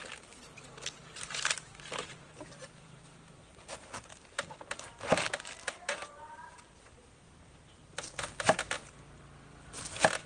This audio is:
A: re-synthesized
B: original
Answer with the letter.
B